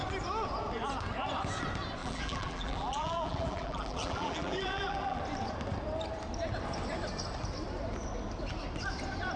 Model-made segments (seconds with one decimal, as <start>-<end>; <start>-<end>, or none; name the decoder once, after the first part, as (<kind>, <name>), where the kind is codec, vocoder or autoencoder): 2.0-5.2 (vocoder, BigVGAN v2)